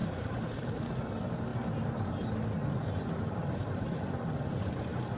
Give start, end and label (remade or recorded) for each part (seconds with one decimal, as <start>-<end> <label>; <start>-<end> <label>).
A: 0.0-0.9 remade; 0.9-5.2 recorded